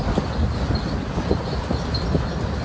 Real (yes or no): yes